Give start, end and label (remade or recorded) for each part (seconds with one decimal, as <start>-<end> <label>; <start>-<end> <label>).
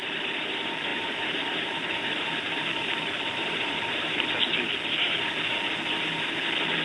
0.0-0.9 recorded; 0.9-4.2 remade; 4.2-6.8 recorded